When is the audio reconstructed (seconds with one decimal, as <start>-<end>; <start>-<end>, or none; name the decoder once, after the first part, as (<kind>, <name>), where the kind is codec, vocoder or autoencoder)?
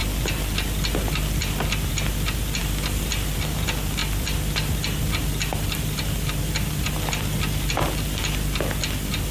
2.6-3.1 (vocoder, BigVGAN v2); 4.0-8.0